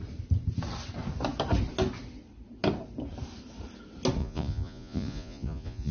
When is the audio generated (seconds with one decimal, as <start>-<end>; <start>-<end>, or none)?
4.2-5.9